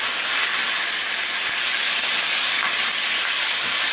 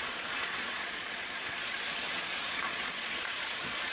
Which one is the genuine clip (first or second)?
first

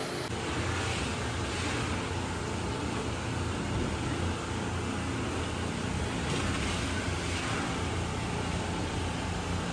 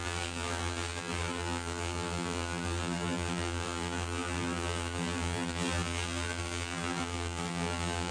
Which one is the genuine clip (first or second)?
first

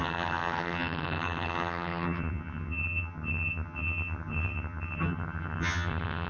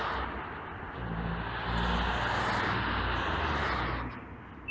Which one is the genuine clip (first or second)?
second